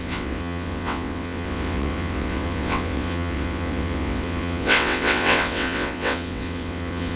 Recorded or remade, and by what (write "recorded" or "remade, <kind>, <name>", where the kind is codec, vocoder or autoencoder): remade, vocoder, WaveNeXt